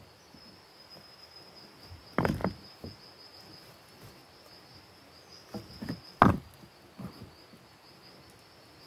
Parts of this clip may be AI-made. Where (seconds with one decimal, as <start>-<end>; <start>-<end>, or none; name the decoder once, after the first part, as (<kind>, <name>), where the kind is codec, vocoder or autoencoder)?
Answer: none